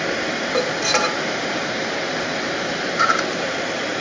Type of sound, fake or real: fake